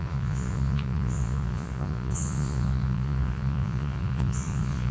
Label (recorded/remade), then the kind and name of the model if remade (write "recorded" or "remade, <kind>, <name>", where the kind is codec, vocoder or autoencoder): remade, vocoder, Vocos